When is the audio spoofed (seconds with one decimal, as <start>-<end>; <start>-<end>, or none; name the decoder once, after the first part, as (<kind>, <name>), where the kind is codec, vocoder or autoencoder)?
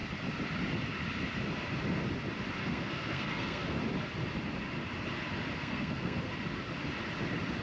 2.6-3.8 (codec, SNAC); 5.6-6.3